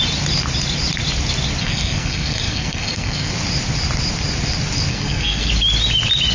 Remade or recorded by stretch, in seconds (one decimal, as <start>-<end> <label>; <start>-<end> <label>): 0.0-1.6 recorded; 1.6-3.3 remade; 3.3-4.9 recorded; 4.9-5.5 remade; 5.5-6.3 recorded